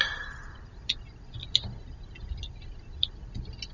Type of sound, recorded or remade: recorded